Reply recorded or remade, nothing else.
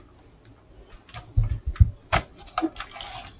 recorded